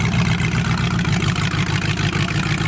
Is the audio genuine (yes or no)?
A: yes